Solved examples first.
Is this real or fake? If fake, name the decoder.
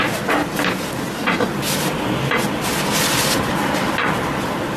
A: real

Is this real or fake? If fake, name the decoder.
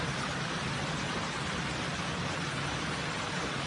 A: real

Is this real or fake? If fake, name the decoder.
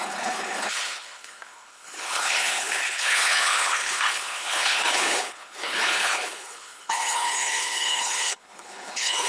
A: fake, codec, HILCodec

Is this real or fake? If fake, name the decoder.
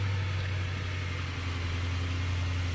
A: real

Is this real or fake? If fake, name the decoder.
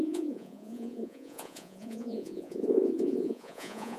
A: fake, vocoder, Vocos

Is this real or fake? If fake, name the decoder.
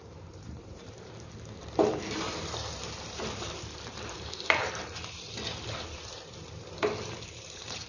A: fake, vocoder, BigVGAN v2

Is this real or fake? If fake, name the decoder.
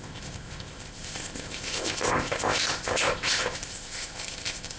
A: fake, codec, ZipCodec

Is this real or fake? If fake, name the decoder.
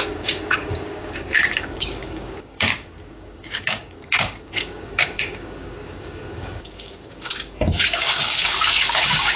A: fake, codec, DAC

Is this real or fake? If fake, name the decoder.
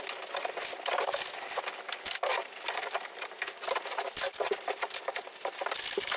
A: real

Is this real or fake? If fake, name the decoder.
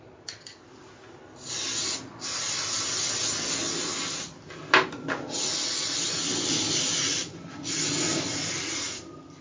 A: real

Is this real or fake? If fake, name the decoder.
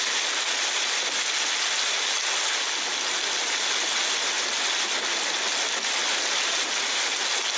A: real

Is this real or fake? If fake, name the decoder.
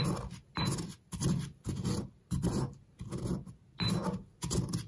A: real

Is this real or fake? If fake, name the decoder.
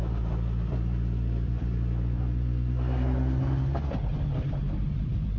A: real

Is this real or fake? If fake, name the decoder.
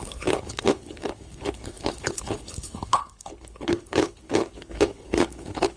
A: fake, codec, HILCodec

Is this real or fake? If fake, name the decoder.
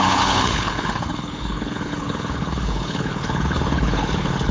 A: fake, codec, HILCodec